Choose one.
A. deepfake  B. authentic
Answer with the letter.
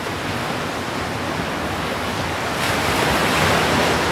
B